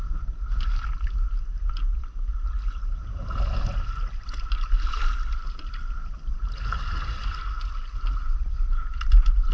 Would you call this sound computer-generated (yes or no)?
no